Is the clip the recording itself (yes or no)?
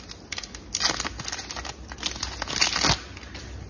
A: yes